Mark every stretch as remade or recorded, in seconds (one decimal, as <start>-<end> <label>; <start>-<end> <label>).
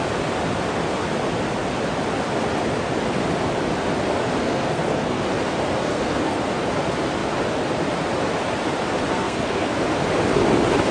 0.0-4.4 recorded; 4.4-5.2 remade; 5.2-5.8 recorded; 5.8-6.4 remade; 6.4-9.1 recorded; 9.1-9.7 remade; 9.7-10.9 recorded